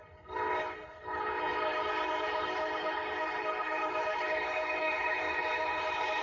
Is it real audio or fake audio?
fake